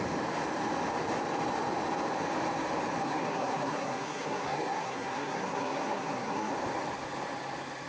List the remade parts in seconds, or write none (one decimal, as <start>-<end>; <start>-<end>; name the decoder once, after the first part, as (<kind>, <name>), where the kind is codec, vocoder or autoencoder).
3.0-6.5 (codec, SNAC)